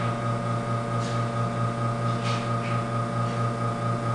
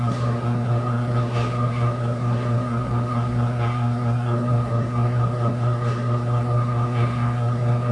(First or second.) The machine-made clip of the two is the second